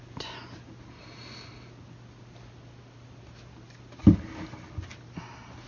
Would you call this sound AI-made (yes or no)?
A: no